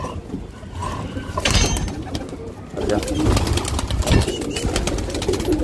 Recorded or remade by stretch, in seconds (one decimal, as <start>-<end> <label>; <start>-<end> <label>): 0.0-5.6 recorded